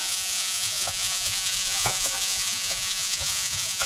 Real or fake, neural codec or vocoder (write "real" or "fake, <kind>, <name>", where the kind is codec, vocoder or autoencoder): fake, vocoder, Vocos